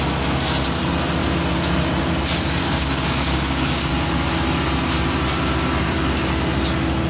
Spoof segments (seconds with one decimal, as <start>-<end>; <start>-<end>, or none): 2.6-3.9